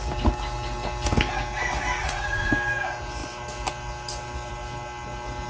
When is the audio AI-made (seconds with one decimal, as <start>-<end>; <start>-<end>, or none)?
2.0-2.5